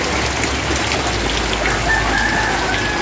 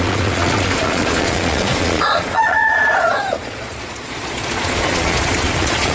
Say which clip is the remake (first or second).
second